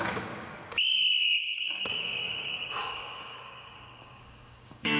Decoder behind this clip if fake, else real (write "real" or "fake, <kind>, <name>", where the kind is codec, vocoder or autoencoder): fake, codec, DAC